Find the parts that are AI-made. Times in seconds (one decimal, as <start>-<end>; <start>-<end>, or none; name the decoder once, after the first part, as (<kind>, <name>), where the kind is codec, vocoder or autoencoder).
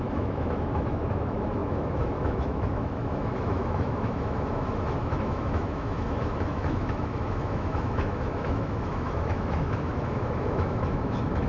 0.0-11.5 (autoencoder, DAC-VAE)